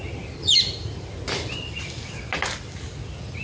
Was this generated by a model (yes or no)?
no